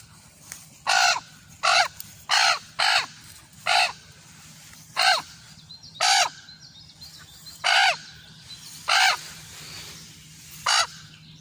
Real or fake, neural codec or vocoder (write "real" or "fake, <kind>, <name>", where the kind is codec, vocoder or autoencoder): real